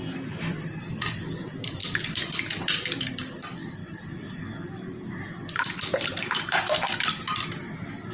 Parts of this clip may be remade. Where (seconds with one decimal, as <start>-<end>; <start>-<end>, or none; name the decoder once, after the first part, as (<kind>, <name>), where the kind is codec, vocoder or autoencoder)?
none